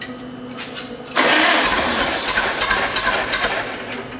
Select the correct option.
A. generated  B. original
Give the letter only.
B